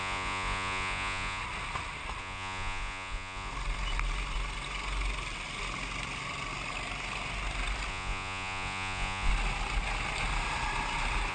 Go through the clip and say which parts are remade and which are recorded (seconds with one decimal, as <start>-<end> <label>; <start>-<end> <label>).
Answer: 0.0-1.4 remade; 1.4-2.2 recorded; 2.2-3.5 remade; 3.5-7.9 recorded; 7.9-9.3 remade; 9.3-11.3 recorded